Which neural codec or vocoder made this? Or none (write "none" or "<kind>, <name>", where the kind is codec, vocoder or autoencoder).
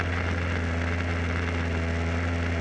none